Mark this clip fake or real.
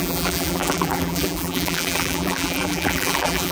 fake